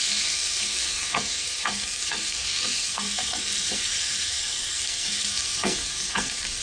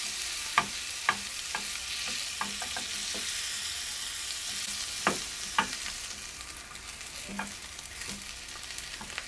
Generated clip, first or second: first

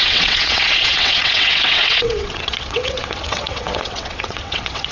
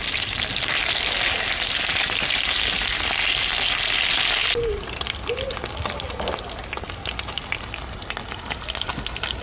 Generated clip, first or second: first